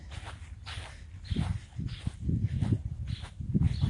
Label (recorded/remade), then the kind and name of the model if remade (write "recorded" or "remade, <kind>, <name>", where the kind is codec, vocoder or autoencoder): recorded